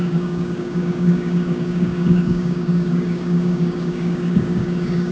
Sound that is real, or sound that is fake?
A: fake